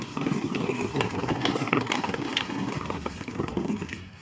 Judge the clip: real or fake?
fake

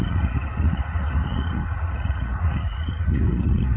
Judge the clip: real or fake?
fake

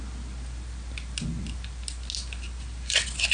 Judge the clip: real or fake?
real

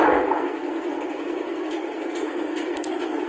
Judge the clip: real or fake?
fake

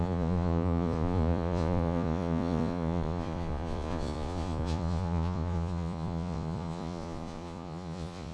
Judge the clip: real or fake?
fake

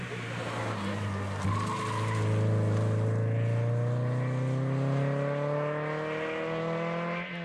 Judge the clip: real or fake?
real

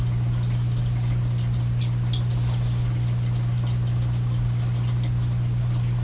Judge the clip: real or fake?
real